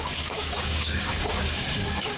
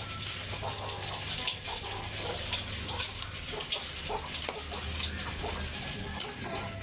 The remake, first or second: first